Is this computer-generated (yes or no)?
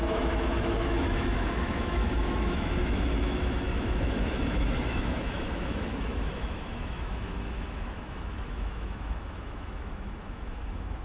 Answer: yes